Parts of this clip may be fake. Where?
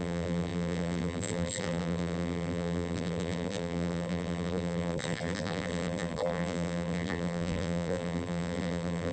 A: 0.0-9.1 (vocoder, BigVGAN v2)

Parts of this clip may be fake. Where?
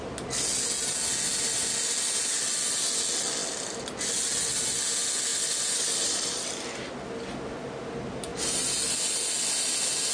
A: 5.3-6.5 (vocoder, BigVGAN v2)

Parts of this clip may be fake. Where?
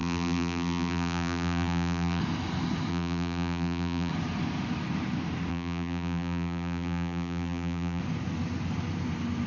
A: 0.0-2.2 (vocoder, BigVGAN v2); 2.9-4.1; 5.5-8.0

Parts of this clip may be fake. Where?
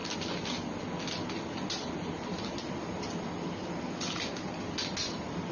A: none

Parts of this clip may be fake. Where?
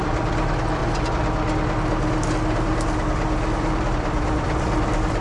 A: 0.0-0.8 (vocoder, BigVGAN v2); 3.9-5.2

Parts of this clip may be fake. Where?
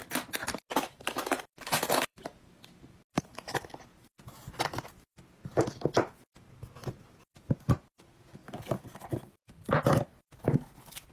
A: 0.4-3.6 (vocoder, BigVGAN v2); 8.4-9.8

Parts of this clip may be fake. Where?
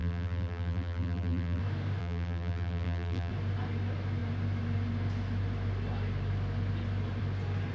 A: 0.0-1.6 (vocoder, BigVGAN v2); 2.0-3.3